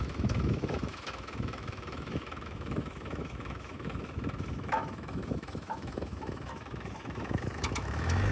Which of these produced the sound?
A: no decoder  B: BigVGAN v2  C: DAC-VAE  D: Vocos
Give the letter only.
C